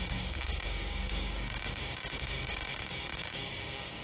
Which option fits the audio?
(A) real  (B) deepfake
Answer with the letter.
B